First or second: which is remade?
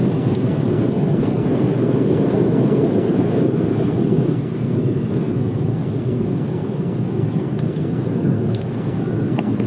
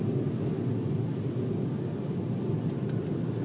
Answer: first